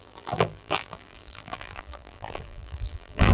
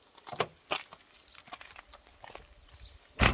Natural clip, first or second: second